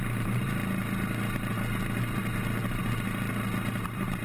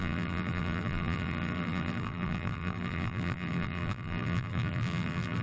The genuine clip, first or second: first